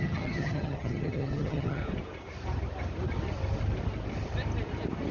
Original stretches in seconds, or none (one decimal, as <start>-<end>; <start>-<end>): 1.8-5.1